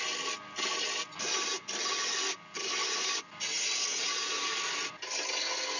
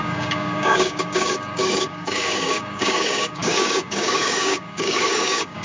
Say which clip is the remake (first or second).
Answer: second